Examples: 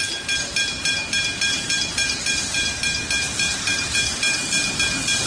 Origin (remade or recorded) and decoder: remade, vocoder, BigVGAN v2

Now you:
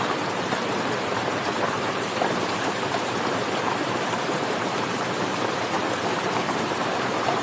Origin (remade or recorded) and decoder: remade, vocoder, BigVGAN v2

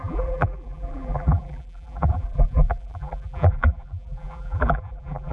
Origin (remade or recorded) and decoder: remade, vocoder, BigVGAN v2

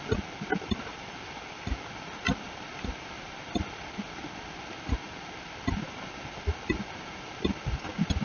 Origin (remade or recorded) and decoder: recorded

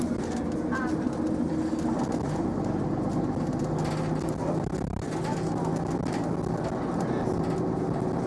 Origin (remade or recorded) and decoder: recorded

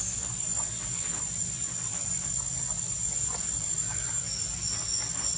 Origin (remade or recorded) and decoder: recorded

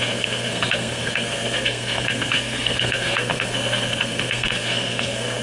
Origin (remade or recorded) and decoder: remade, codec, SNAC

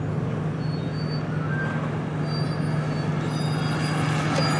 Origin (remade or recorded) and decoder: recorded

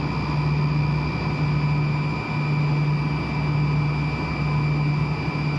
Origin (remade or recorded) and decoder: recorded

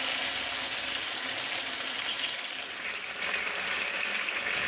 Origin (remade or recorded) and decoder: recorded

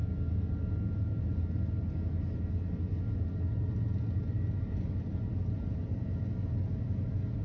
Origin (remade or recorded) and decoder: recorded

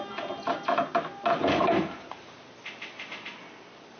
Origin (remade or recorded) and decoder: recorded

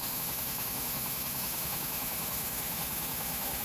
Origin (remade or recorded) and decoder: remade, autoencoder, DAC-VAE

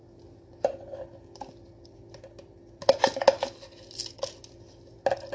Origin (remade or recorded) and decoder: recorded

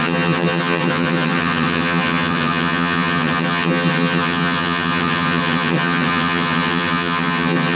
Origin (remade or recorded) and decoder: remade, vocoder, HiFi-GAN